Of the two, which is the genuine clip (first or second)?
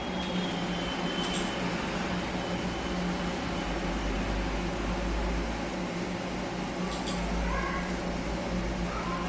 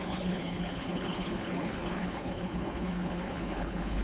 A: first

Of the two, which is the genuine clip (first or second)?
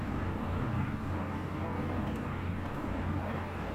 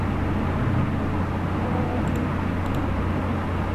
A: second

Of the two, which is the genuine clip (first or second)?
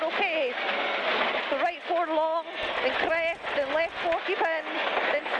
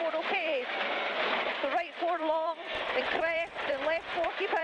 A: first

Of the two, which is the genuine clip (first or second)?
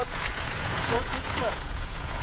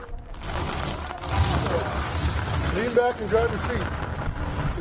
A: second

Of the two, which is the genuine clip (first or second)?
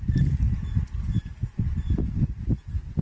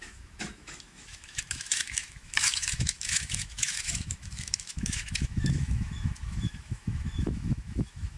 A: first